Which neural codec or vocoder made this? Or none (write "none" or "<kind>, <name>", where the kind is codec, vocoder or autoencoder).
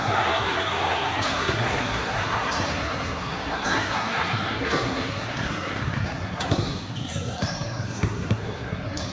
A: codec, SNAC